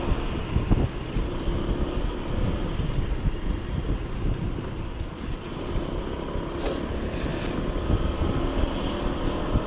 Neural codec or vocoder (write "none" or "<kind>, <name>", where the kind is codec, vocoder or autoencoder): none